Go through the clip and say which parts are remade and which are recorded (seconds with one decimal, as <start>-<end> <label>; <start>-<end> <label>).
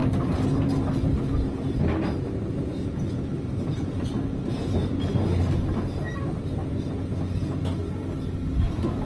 0.0-9.1 recorded